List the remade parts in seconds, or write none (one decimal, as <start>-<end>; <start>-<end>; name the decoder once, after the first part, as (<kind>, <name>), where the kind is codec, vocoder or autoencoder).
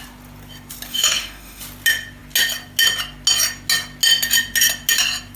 0.9-1.6 (autoencoder, DAC-VAE)